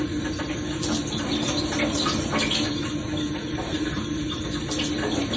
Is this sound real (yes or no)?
yes